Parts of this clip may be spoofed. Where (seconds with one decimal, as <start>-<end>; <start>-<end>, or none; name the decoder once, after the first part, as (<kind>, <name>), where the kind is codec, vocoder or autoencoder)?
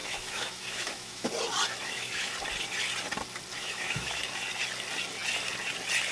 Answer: 0.0-1.3 (autoencoder, DAC-VAE); 1.8-2.3; 3.6-4.2